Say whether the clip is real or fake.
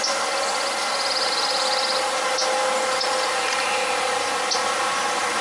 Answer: real